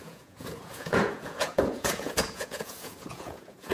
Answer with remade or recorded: remade